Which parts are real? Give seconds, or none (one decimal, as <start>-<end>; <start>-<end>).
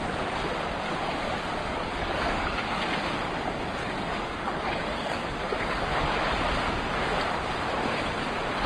0.0-1.6; 2.8-3.8; 5.8-8.7